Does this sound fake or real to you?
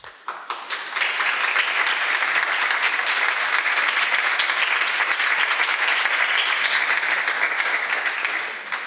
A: real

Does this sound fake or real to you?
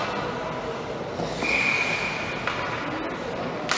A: real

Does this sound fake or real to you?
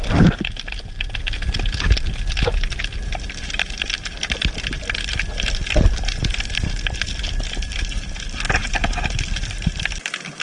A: real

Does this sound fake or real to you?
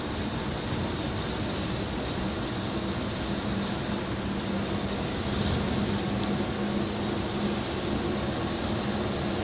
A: real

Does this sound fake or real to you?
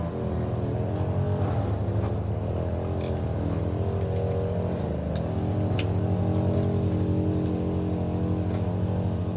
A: real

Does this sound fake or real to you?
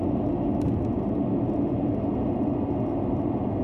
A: real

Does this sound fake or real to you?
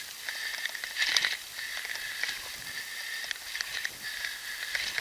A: real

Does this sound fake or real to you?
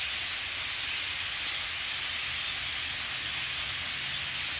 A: real